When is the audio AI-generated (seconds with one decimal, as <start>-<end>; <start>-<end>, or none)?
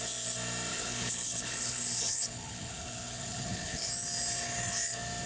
0.7-3.9